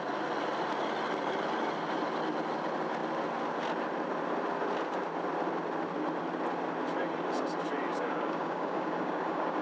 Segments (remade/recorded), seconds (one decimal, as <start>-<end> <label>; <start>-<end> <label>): 0.0-7.9 recorded; 7.9-9.6 remade